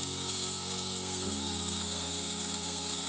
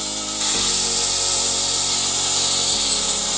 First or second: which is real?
second